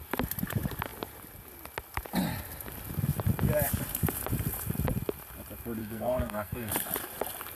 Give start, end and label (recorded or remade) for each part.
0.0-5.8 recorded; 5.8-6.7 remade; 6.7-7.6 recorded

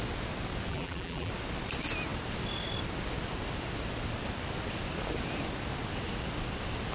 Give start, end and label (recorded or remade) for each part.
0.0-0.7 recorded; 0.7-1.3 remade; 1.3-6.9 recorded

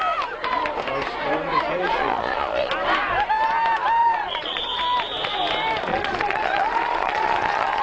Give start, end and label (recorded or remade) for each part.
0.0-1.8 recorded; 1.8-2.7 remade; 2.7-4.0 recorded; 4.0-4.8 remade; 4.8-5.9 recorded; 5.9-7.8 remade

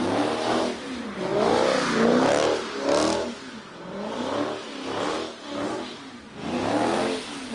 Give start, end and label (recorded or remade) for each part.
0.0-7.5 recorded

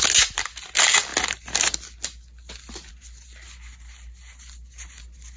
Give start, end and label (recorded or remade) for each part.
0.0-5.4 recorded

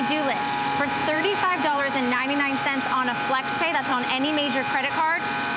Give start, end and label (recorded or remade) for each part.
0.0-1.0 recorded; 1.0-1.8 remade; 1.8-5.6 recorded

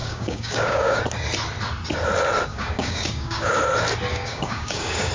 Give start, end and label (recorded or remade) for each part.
0.0-1.0 remade; 1.0-2.5 recorded; 2.5-3.6 remade; 3.6-4.1 recorded; 4.1-5.1 remade

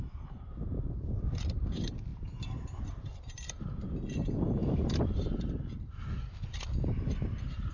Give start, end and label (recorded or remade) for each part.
0.0-7.7 recorded